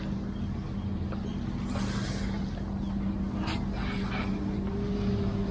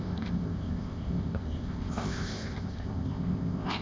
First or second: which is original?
first